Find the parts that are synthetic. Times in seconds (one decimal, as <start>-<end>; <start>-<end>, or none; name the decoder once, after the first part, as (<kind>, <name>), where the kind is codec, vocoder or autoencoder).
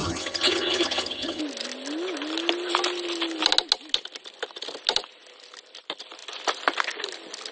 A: 0.0-1.4 (vocoder, HiFi-GAN)